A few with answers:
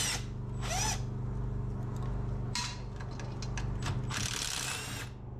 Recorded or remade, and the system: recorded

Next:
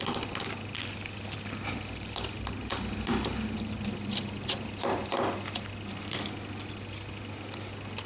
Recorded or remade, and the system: recorded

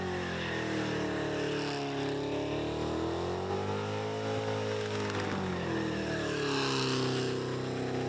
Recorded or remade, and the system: recorded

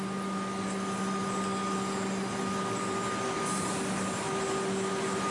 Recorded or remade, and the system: recorded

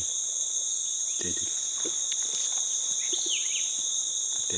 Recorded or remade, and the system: recorded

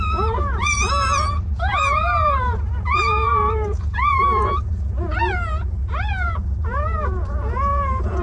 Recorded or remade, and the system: remade, vocoder, Vocos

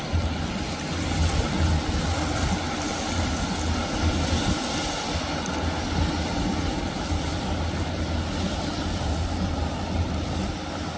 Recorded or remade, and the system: recorded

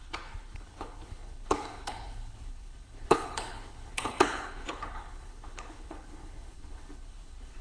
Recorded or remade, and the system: remade, codec, HILCodec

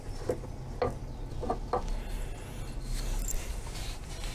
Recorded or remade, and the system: recorded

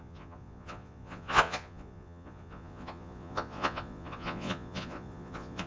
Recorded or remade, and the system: remade, vocoder, Vocos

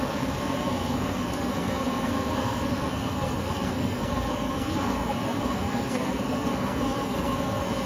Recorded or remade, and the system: remade, codec, SNAC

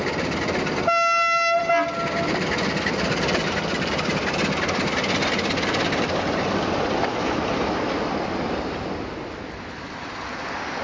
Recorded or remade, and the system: recorded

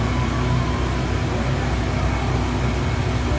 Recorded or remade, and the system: recorded